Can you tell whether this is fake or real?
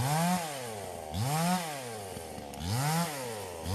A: real